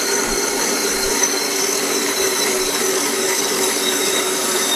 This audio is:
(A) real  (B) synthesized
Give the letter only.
B